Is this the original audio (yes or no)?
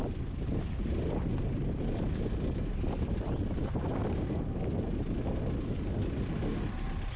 yes